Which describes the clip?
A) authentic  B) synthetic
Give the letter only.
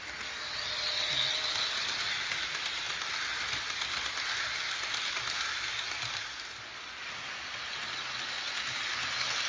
A